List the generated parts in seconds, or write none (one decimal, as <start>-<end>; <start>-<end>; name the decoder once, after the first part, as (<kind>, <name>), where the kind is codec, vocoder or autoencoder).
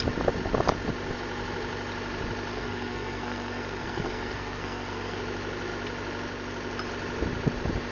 2.5-5.2 (codec, SNAC)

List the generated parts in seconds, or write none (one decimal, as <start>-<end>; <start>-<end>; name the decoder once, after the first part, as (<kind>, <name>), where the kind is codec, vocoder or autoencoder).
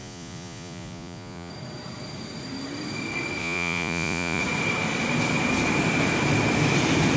0.0-1.5 (vocoder, Vocos); 3.4-4.4